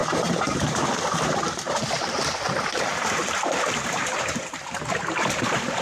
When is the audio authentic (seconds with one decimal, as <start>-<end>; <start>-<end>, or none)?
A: none